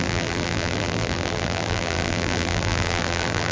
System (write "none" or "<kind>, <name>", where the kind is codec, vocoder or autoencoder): vocoder, BigVGAN v2